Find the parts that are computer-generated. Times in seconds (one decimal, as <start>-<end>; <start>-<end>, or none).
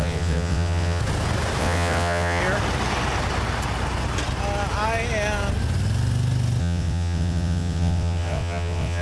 0.0-1.0; 1.6-2.4; 6.6-9.0